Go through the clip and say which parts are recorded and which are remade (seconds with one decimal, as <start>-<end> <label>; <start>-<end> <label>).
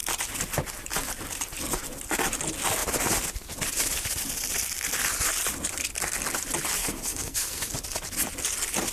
0.0-6.8 recorded; 6.8-7.7 remade; 7.7-8.9 recorded